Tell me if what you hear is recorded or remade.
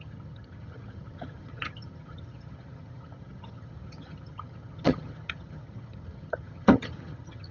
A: remade